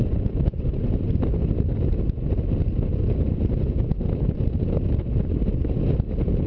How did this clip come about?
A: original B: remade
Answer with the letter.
A